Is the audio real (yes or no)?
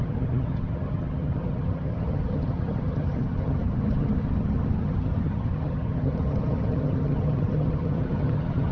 no